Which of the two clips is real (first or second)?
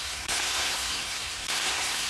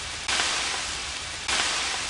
second